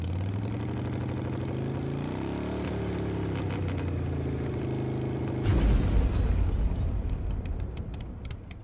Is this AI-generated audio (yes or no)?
no